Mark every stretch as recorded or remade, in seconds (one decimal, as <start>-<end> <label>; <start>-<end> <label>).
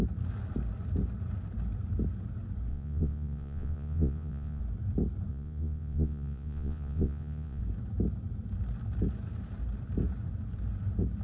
0.0-2.7 recorded; 2.7-4.6 remade; 4.6-5.3 recorded; 5.3-7.6 remade; 7.6-11.2 recorded